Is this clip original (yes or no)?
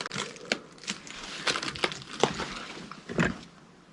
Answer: yes